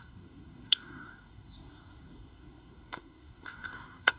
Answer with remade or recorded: remade